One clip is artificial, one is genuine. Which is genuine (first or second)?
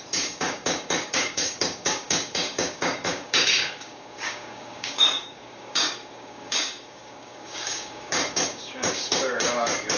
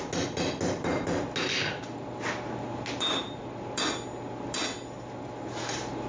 second